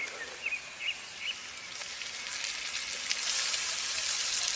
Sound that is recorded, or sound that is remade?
recorded